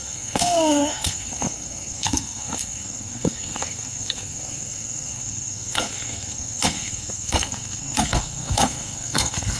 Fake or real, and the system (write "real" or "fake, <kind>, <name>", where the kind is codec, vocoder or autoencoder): fake, codec, SNAC